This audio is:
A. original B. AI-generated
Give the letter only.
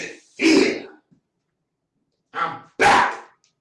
A